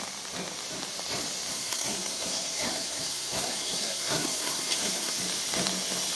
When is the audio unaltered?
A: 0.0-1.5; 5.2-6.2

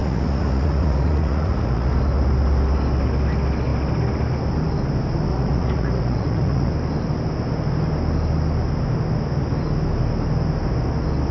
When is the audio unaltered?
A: 1.9-5.3; 6.7-11.3

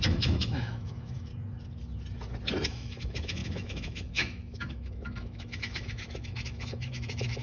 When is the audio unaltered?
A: 1.3-2.7